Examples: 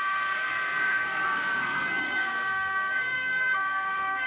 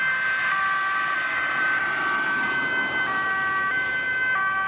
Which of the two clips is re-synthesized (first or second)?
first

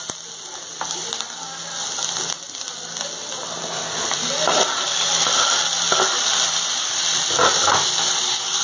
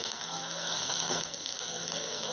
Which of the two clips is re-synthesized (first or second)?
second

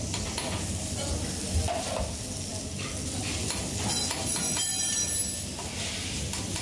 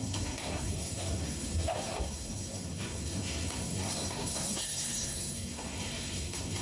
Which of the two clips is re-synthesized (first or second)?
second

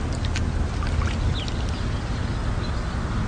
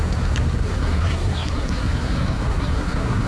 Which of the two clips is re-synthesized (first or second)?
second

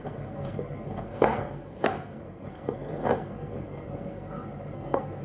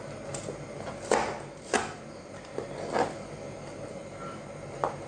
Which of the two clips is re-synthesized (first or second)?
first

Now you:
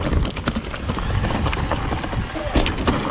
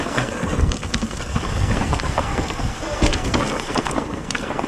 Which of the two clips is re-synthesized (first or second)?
second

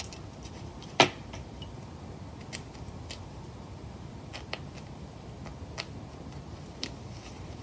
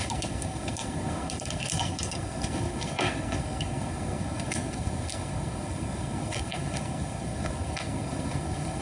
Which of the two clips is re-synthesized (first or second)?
second